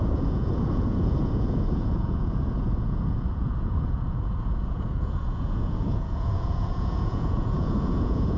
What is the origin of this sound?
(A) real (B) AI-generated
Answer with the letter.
B